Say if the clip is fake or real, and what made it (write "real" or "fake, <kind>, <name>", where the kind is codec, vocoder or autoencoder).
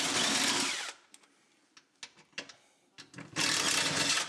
real